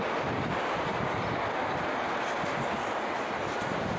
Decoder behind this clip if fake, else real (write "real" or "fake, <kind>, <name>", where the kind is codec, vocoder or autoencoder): real